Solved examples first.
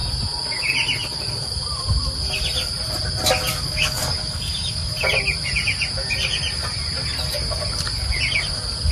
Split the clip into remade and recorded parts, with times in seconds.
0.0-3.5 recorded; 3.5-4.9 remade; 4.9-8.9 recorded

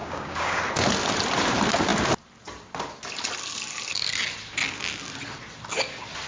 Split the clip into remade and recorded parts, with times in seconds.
0.0-0.6 remade; 0.6-6.3 recorded

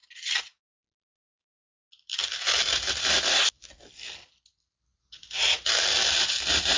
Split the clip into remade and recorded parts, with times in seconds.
0.0-6.8 recorded